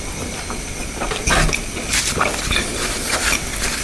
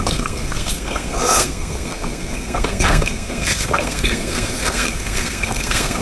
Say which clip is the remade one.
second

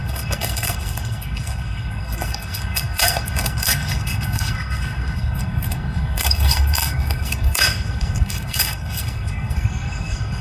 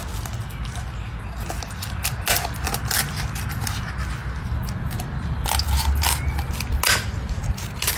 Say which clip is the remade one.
first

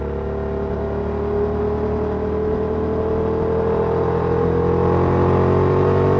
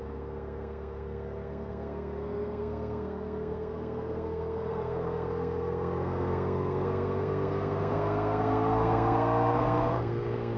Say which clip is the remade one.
second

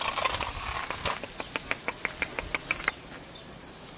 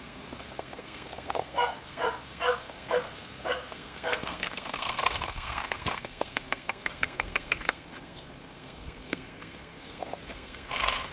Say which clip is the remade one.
second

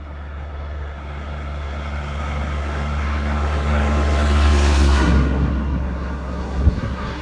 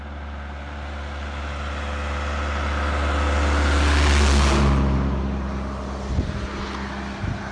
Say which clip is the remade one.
first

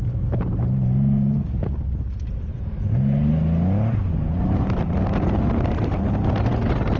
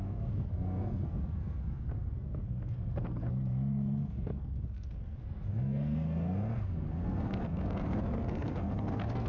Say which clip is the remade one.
second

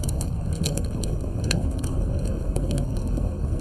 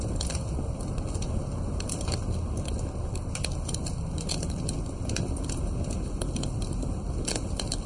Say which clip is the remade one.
first